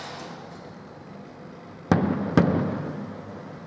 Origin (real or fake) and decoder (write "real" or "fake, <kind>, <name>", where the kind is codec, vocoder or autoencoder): real